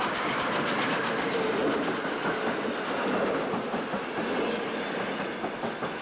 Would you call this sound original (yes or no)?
yes